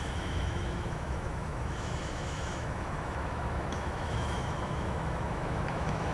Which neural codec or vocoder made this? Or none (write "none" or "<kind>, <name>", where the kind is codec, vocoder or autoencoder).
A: autoencoder, DAC-VAE